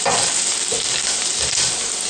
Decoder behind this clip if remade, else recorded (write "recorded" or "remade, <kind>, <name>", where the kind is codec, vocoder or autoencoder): recorded